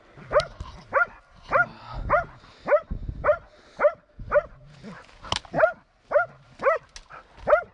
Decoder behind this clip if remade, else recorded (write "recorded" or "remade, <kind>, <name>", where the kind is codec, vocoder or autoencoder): recorded